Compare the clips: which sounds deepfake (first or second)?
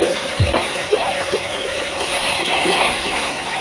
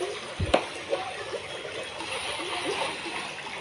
first